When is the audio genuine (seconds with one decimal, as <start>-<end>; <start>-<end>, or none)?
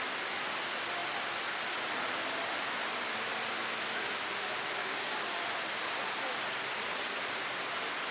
0.0-4.8; 5.4-8.1